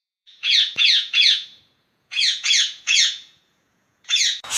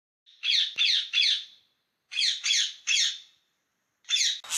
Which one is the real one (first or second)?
second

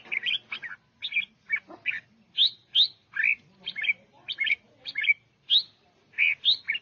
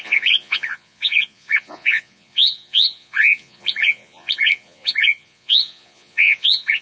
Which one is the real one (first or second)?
first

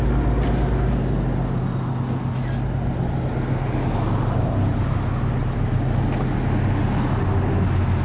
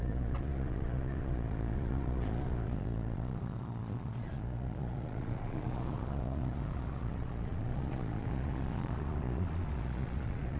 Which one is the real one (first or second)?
first